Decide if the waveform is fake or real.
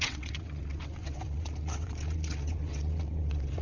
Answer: fake